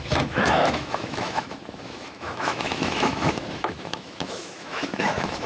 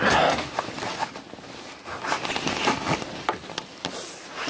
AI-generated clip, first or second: first